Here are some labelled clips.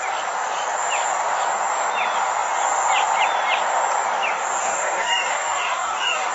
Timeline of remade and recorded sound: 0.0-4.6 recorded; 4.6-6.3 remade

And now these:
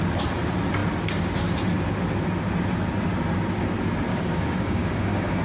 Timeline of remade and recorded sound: 0.0-4.1 recorded; 4.1-5.4 remade

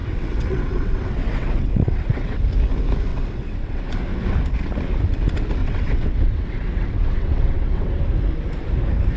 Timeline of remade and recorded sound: 0.0-2.4 remade; 2.4-3.1 recorded; 3.1-3.9 remade; 3.9-5.6 recorded; 5.6-8.0 remade; 8.0-9.2 recorded

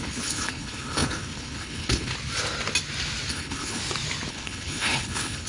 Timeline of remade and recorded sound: 0.0-2.1 remade; 2.1-3.3 recorded; 3.3-3.8 remade; 3.8-4.3 recorded; 4.3-5.5 remade

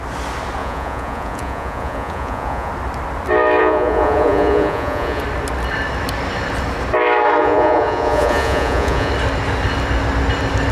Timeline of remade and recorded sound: 0.0-0.6 recorded; 0.6-2.7 remade; 2.7-3.6 recorded; 3.6-5.2 remade; 5.2-7.4 recorded; 7.4-9.1 remade; 9.1-10.7 recorded

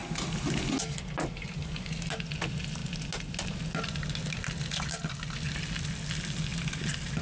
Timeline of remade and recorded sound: 0.0-7.2 recorded